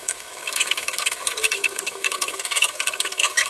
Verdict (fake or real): fake